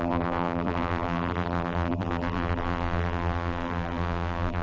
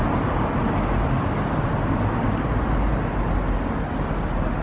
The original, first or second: second